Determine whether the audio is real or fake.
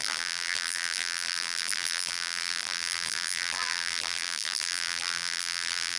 fake